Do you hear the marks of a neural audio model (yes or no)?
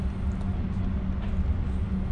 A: no